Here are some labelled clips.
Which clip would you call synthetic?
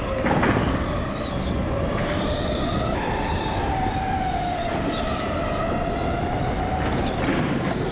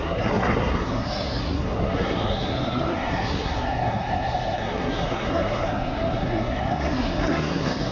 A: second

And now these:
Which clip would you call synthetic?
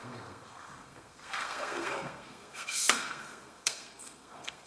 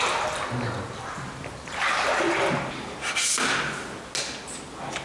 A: first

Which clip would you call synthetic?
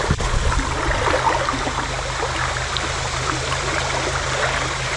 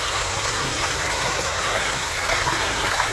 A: second